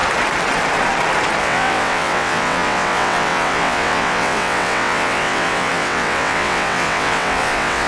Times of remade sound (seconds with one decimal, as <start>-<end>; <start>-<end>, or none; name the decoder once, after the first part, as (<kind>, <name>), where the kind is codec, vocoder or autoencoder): 1.4-7.9 (vocoder, WaveNeXt)